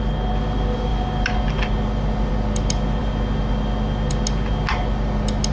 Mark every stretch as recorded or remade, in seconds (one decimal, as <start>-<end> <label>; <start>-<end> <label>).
0.0-5.5 recorded